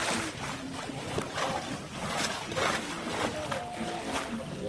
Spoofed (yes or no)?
no